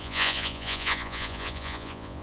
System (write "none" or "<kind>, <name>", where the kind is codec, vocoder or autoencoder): vocoder, Vocos